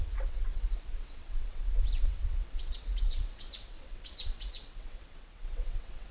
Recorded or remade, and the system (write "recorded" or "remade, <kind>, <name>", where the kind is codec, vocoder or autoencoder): remade, vocoder, WaveNeXt